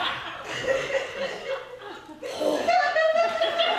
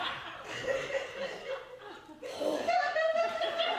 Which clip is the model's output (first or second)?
second